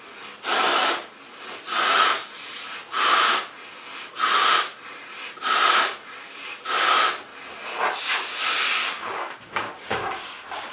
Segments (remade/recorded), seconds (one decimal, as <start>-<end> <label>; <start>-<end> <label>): 0.0-8.8 recorded; 8.8-10.7 remade